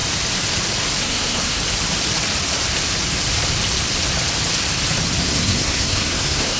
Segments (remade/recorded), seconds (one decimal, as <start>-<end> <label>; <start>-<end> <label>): 0.0-1.0 recorded; 1.0-1.6 remade; 1.6-5.2 recorded; 5.2-6.6 remade